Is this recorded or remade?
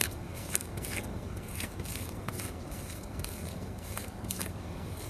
remade